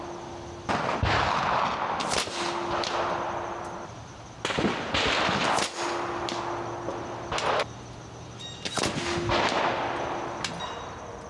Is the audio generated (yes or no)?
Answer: no